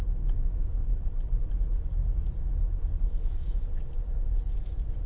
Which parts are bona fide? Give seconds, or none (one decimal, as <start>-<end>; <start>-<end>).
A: 0.0-0.8; 1.5-5.1